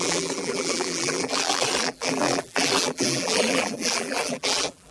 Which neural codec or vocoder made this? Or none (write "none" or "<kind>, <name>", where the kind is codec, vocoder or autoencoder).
vocoder, BigVGAN v2